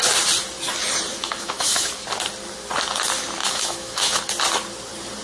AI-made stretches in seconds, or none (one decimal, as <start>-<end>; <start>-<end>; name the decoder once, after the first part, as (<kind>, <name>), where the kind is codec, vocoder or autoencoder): 1.1-1.9 (autoencoder, DAC-VAE); 3.4-4.2